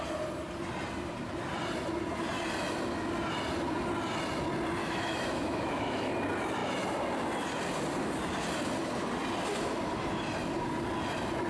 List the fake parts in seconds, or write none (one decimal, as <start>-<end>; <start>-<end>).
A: 4.8-6.1